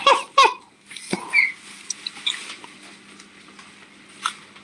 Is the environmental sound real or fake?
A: real